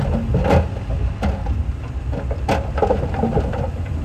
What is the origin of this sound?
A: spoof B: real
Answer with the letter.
B